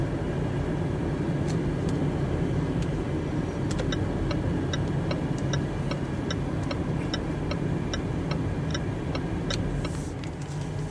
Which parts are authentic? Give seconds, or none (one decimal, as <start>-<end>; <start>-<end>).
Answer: 0.0-10.9